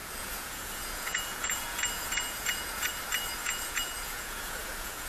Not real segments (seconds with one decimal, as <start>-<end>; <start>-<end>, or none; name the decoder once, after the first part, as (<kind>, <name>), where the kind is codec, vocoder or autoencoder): 0.0-2.9 (vocoder, Vocos); 3.4-5.1